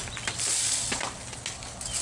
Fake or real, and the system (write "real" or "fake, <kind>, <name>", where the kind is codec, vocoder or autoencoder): real